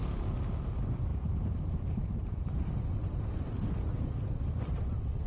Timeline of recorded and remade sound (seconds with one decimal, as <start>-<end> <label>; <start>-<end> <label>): 0.0-1.1 recorded; 1.1-2.8 remade; 2.8-5.3 recorded